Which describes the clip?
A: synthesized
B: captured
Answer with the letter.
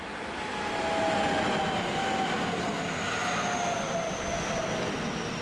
B